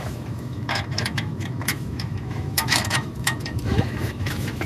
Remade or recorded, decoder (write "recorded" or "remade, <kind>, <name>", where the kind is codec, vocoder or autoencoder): remade, autoencoder, DAC-VAE